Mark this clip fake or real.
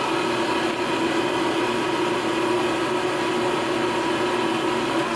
real